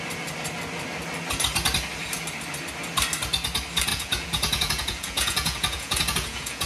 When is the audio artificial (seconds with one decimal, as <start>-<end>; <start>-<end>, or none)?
3.9-6.7